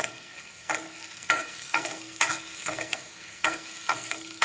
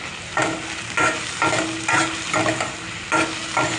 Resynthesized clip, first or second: first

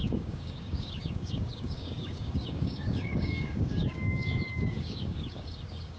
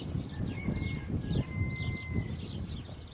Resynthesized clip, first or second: first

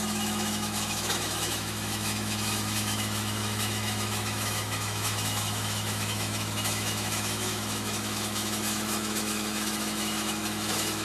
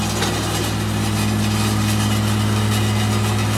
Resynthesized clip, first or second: first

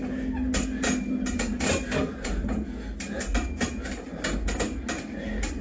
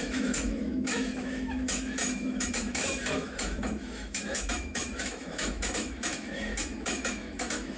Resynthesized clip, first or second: second